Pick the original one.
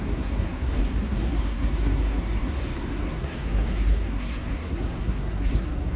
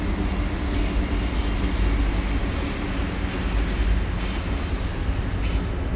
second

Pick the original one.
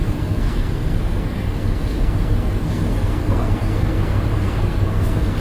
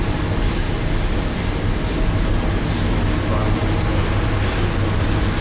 second